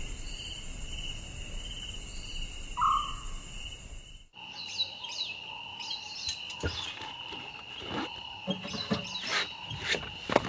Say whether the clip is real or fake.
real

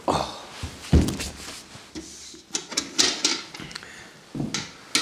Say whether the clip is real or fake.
real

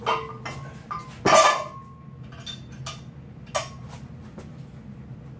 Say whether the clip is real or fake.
real